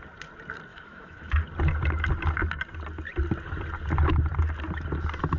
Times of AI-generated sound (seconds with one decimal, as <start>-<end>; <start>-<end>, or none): 0.7-1.3